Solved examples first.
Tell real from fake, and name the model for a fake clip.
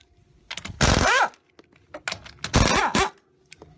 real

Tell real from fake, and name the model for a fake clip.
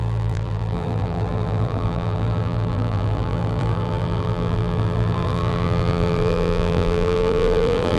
fake, vocoder, BigVGAN v2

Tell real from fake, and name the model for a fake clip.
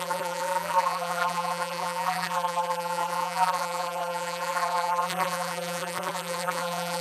fake, vocoder, BigVGAN v2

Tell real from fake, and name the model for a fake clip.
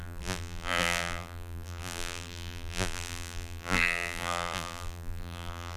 fake, vocoder, BigVGAN v2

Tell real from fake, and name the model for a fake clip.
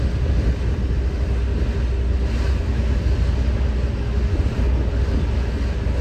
real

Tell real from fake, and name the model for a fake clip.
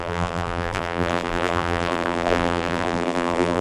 fake, vocoder, BigVGAN v2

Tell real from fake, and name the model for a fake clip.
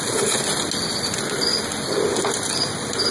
real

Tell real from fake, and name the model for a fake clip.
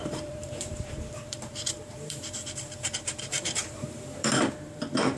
fake, vocoder, BigVGAN v2